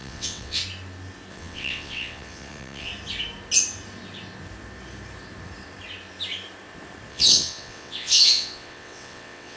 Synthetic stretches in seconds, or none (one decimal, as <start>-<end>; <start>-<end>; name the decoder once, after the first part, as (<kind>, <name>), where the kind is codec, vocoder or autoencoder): 0.0-0.6 (vocoder, WaveNeXt); 1.3-2.9; 7.1-9.6